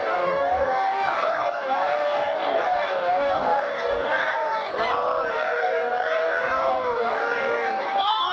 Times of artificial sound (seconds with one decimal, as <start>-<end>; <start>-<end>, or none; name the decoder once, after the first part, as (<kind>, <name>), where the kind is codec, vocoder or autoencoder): 0.0-4.7 (codec, DAC); 5.3-8.3